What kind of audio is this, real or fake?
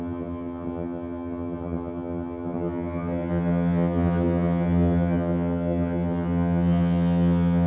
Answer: fake